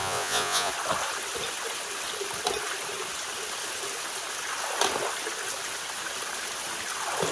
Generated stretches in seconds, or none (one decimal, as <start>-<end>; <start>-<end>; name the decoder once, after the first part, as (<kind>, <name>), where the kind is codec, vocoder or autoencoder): 0.0-0.7 (vocoder, Vocos)